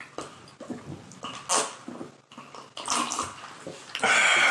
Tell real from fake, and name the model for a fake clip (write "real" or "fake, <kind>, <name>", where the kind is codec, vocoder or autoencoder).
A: real